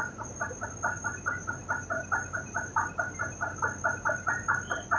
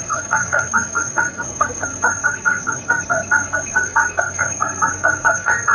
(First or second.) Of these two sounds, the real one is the first